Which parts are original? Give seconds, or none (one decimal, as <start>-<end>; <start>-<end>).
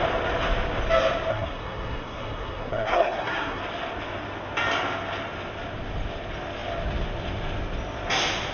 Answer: 0.0-1.3; 3.6-8.5